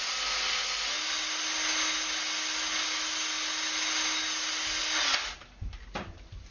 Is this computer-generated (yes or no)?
no